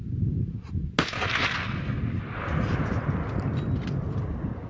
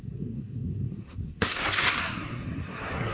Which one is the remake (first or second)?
second